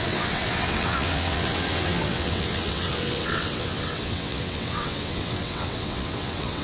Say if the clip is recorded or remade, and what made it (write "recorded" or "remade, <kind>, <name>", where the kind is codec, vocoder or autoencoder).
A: remade, vocoder, WaveNeXt